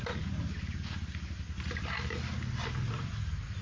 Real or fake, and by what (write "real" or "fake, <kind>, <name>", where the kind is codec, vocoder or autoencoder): real